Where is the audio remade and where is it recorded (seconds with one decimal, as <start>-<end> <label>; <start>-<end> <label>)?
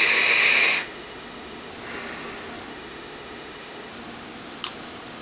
0.0-0.7 recorded; 0.7-1.7 remade; 1.7-2.7 recorded; 2.7-3.9 remade; 3.9-5.2 recorded